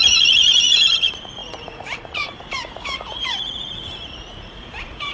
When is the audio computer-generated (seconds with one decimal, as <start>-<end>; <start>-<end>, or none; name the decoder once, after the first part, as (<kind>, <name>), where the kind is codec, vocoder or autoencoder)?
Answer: 0.0-5.1 (vocoder, Vocos)